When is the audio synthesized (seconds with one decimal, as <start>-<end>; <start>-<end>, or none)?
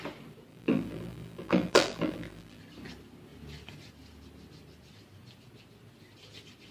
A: 0.5-2.6